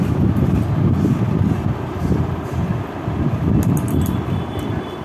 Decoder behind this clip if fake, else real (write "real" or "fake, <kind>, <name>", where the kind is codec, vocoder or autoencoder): real